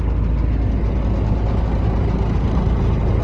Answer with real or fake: real